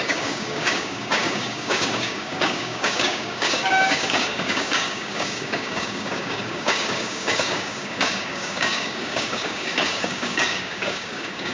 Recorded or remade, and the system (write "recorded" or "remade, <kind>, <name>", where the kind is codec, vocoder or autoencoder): remade, codec, DAC